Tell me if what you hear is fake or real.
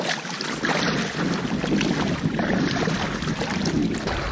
real